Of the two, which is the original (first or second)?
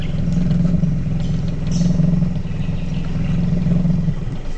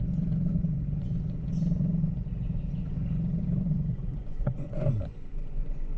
first